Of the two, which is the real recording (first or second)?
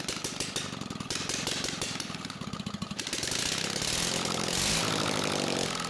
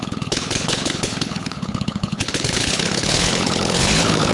first